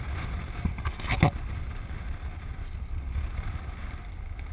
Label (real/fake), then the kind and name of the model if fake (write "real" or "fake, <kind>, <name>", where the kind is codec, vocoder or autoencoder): real